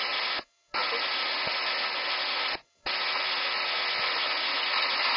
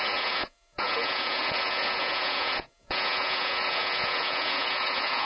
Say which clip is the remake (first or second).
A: second